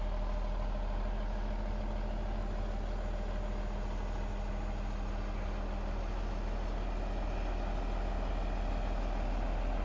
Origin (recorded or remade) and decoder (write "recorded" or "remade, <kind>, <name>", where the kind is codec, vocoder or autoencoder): recorded